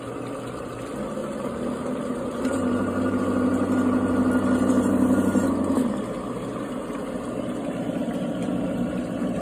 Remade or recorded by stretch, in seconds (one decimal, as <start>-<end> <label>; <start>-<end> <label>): 0.0-1.2 recorded; 1.2-3.2 remade; 3.2-9.4 recorded